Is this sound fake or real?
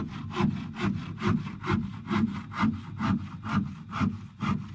real